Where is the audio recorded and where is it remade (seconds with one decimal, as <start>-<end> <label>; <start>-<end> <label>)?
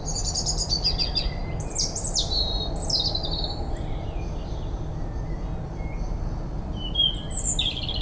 0.0-8.0 recorded